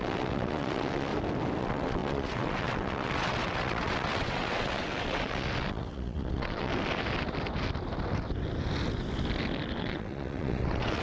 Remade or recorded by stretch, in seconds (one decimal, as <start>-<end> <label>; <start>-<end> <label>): 0.0-1.1 remade; 1.1-1.6 recorded; 1.6-6.7 remade; 6.7-9.8 recorded; 9.8-11.0 remade